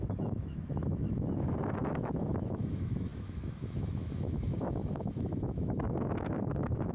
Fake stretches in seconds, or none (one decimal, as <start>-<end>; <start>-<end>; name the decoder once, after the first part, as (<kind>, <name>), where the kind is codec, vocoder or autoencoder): 0.0-6.9 (autoencoder, DAC-VAE)